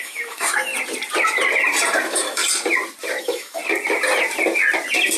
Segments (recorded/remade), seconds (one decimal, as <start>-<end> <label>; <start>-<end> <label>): 0.0-0.7 remade; 0.7-2.0 recorded; 2.0-2.4 remade; 2.4-3.2 recorded; 3.2-3.6 remade; 3.6-5.2 recorded